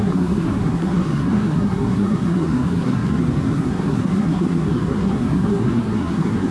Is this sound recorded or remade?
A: remade